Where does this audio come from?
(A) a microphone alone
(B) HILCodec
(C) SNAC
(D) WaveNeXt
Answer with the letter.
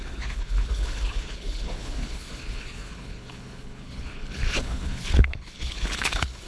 B